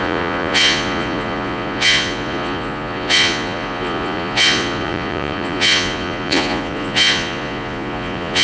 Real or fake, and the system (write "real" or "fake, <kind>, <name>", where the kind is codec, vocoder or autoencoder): fake, vocoder, Vocos